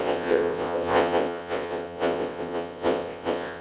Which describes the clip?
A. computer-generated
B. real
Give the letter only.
A